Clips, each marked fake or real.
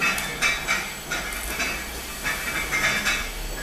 real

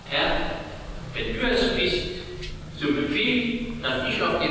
real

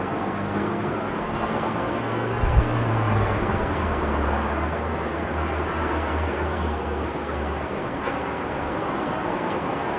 fake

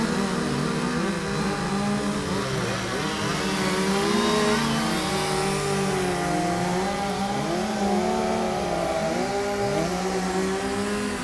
real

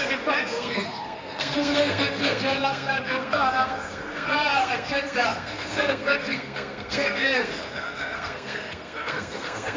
fake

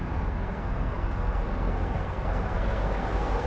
fake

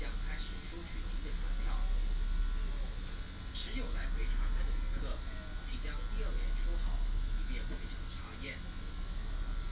real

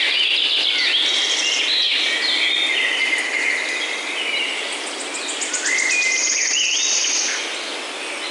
real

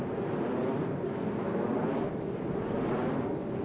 real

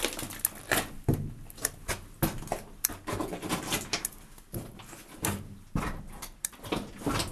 real